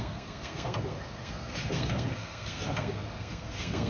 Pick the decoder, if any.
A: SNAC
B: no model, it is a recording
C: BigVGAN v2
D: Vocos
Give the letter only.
A